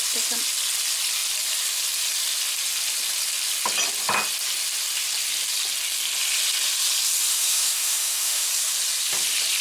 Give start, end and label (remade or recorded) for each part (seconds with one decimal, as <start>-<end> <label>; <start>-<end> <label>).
0.0-7.3 recorded; 7.3-8.5 remade; 8.5-9.6 recorded